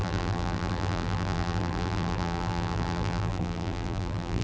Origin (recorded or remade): remade